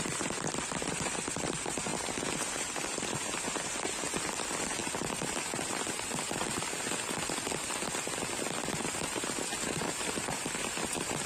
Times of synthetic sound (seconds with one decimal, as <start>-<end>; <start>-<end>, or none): none